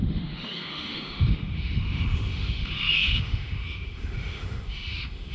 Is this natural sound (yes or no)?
no